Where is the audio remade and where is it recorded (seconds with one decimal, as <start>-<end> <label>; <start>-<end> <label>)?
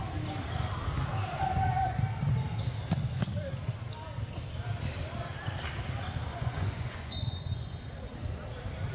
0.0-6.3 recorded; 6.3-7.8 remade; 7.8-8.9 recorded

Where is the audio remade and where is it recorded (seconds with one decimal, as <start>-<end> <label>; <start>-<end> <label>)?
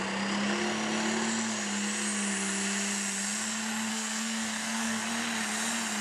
0.0-3.9 recorded; 3.9-5.1 remade; 5.1-6.0 recorded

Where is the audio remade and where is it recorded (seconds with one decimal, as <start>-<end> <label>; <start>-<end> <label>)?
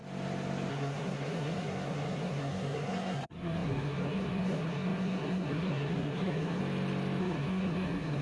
0.0-0.7 recorded; 0.7-6.6 remade; 6.6-7.2 recorded; 7.2-8.2 remade